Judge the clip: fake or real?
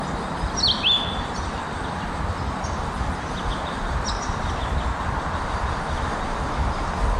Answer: real